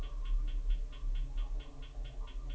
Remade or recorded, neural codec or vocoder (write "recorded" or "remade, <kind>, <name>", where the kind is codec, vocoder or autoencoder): recorded